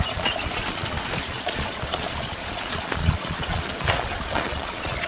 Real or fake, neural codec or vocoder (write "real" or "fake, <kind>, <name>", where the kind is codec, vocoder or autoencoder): fake, vocoder, Vocos